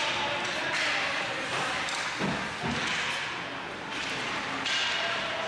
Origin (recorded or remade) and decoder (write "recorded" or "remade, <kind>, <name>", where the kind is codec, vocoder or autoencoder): recorded